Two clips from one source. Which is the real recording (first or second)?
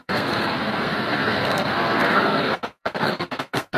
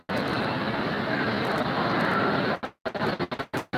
second